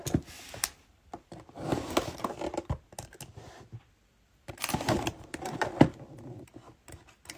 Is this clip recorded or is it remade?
recorded